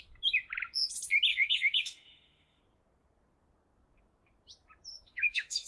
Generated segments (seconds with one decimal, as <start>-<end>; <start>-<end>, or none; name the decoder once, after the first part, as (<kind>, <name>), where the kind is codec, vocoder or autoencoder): 1.3-2.6 (autoencoder, DAC-VAE); 4.9-5.7